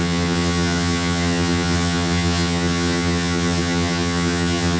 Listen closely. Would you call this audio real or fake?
fake